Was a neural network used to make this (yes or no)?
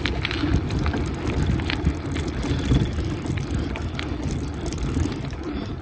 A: no